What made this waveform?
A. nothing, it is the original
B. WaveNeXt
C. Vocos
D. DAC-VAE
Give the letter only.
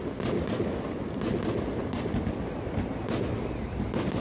A